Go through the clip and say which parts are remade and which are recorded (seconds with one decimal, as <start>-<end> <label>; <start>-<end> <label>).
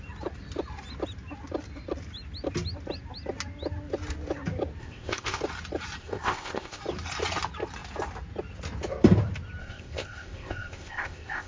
0.0-4.8 recorded; 4.8-5.4 remade; 5.4-6.0 recorded; 6.0-6.8 remade; 6.8-9.6 recorded; 9.6-11.5 remade